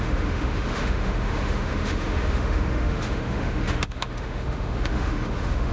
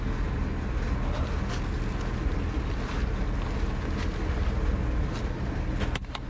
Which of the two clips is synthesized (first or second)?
first